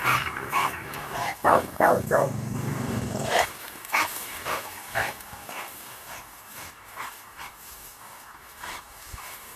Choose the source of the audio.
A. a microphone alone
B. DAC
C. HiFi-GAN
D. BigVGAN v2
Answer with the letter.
B